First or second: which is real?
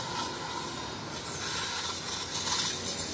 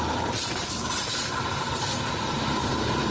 first